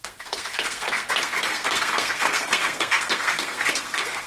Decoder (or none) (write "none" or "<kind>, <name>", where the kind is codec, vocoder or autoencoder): codec, SNAC